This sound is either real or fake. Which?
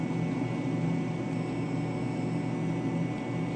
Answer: real